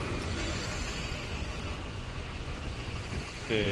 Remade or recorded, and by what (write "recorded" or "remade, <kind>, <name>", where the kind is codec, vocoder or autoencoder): remade, vocoder, Vocos